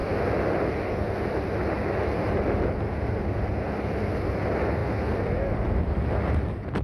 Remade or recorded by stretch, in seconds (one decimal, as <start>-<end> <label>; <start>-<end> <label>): 0.0-6.8 recorded